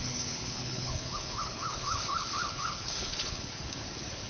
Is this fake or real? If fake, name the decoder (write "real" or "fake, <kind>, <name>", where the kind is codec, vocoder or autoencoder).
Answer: fake, codec, HILCodec